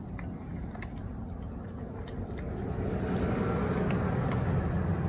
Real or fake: real